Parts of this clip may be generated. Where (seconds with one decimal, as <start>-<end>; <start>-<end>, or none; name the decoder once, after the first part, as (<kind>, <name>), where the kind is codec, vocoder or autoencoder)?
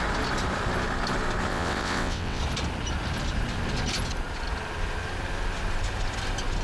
1.5-2.4 (vocoder, WaveNeXt)